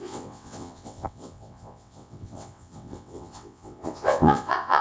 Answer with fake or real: fake